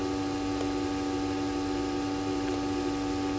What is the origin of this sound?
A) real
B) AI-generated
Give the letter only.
A